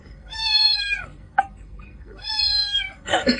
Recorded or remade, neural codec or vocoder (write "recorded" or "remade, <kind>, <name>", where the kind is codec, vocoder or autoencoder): remade, codec, SNAC